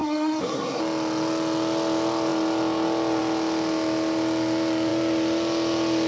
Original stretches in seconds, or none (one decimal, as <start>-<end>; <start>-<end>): 0.8-6.1